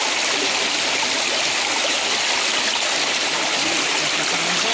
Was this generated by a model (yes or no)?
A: no